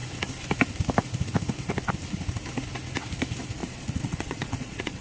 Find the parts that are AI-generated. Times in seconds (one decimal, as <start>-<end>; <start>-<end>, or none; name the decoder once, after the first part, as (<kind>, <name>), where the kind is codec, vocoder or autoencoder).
3.6-5.0 (vocoder, Vocos)